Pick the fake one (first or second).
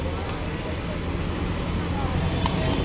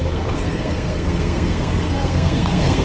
second